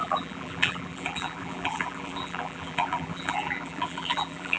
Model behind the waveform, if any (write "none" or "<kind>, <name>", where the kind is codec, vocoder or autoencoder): vocoder, BigVGAN v2